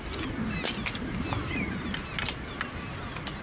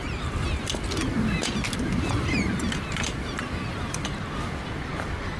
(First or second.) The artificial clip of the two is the second